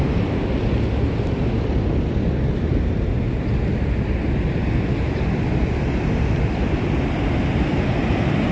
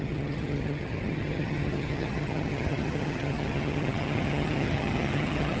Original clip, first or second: first